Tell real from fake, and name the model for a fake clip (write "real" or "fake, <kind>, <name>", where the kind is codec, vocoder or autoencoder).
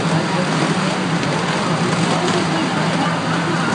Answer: real